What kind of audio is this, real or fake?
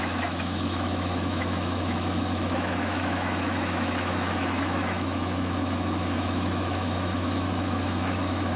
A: fake